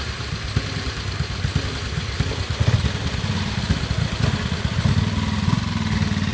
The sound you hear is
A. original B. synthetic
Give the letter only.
A